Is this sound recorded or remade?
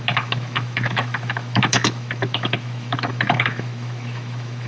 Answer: remade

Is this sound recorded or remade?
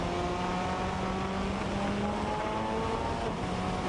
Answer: recorded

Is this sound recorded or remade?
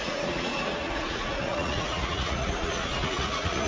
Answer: remade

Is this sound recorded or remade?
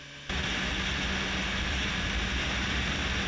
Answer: recorded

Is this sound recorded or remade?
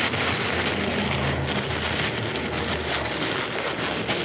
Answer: recorded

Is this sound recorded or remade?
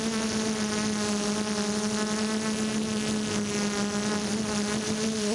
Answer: recorded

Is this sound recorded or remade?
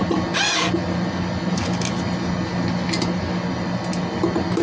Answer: recorded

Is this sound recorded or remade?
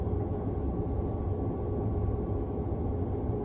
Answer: recorded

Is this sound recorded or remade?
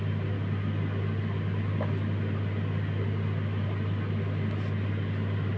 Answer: recorded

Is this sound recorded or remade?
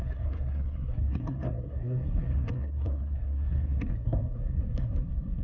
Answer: remade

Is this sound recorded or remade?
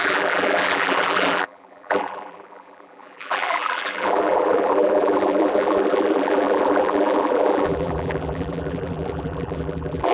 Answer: remade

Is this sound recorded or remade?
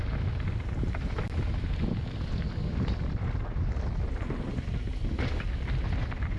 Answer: recorded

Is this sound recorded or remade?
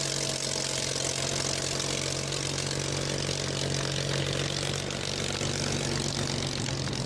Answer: recorded